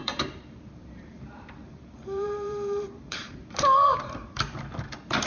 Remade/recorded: remade